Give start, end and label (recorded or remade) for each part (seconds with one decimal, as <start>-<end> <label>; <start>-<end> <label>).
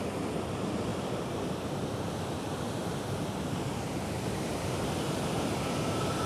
0.0-6.3 recorded